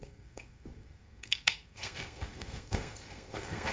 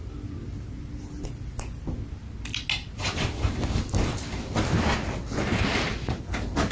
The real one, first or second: second